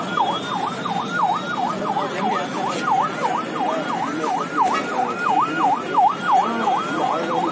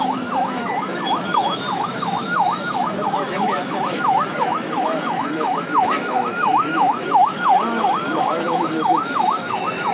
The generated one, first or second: second